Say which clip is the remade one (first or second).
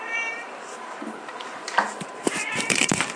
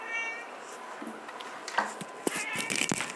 first